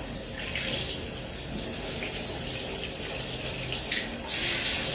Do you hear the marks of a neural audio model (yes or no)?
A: no